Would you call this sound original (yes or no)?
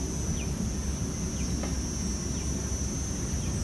yes